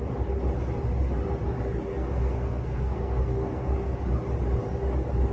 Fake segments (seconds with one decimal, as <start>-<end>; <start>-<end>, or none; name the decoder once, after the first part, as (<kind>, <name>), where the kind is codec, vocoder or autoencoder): 1.9-4.0 (codec, SNAC)